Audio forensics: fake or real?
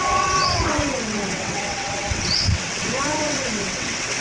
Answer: fake